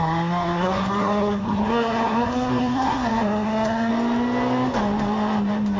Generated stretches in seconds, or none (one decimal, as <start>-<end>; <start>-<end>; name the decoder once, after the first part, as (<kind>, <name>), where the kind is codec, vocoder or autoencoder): 0.0-3.9 (codec, SNAC)